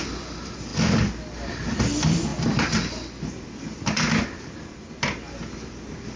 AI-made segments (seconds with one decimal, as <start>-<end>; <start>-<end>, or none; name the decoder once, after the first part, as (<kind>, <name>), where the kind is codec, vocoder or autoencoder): none